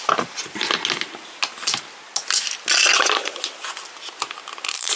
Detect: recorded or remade recorded